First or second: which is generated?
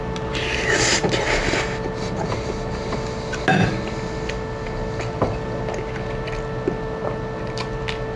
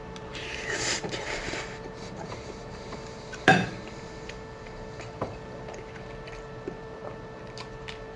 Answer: second